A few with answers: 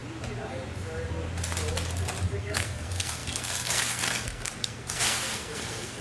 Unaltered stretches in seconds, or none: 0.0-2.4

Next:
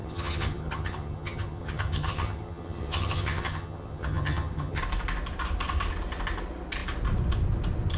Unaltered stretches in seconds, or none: 4.8-8.0

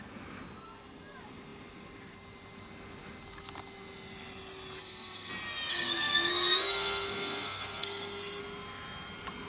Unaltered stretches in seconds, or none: 0.0-4.8; 5.3-5.7; 8.4-9.5

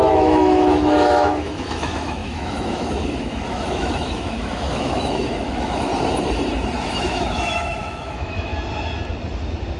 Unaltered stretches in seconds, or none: 5.9-6.8; 8.5-9.8

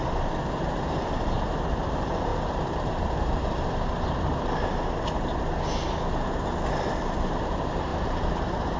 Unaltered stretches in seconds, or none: 4.3-7.0

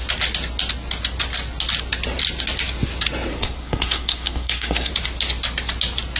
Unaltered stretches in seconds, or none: 0.0-3.3; 4.9-6.2

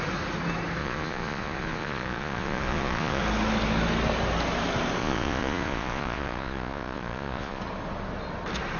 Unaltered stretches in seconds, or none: 0.0-0.8; 3.2-5.0; 7.6-8.8

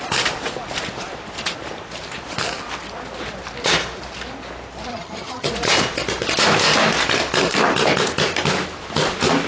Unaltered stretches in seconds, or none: 0.0-4.9; 5.5-9.5